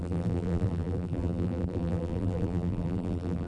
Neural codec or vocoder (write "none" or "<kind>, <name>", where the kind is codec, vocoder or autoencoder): vocoder, BigVGAN v2